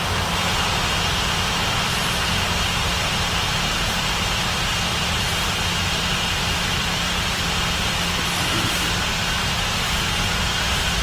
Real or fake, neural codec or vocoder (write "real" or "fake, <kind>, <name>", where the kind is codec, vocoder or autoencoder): real